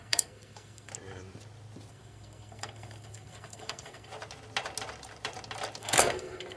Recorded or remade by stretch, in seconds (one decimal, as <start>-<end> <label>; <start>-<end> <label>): 0.0-0.9 remade; 0.9-1.9 recorded; 1.9-4.1 remade; 4.1-5.8 recorded; 5.8-6.6 remade